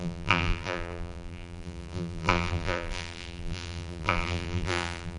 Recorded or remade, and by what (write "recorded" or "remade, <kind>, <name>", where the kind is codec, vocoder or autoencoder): remade, vocoder, BigVGAN v2